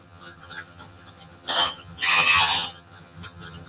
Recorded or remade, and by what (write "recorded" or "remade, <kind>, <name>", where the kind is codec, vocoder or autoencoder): remade, vocoder, HiFi-GAN